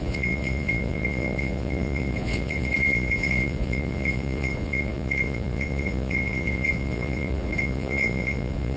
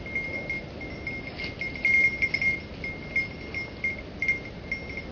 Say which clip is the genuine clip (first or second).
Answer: second